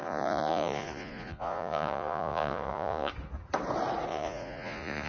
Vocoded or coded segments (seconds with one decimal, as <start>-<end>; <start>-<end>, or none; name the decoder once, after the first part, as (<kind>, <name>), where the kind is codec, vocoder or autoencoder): 0.0-3.1 (vocoder, Vocos); 4.1-5.1